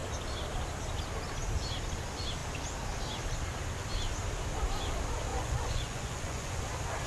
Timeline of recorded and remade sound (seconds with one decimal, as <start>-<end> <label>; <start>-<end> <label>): 0.0-5.3 recorded; 5.3-6.6 remade; 6.6-7.1 recorded